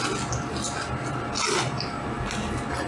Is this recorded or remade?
recorded